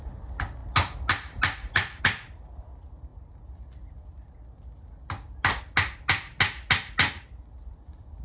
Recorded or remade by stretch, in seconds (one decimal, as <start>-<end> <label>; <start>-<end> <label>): 0.0-8.2 recorded